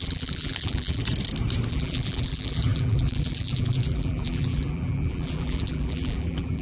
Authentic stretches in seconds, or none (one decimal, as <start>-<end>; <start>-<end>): 1.0-1.7